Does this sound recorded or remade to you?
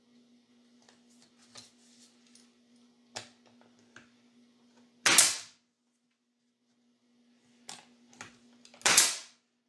recorded